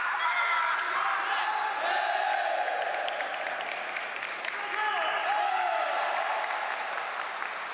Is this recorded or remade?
recorded